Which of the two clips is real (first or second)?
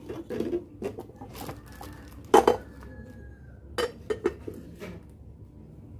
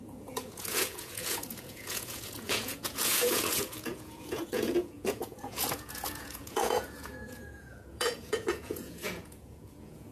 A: first